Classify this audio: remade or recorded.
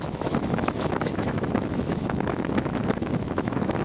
remade